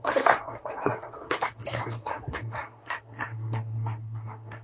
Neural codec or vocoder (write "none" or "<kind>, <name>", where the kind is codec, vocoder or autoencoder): codec, SNAC